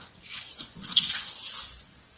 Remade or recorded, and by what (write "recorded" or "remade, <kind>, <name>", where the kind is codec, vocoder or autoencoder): remade, vocoder, Vocos